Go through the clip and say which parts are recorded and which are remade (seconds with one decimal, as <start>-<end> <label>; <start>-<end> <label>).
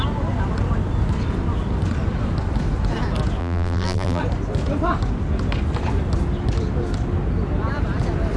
0.0-3.4 recorded; 3.4-4.2 remade; 4.2-8.4 recorded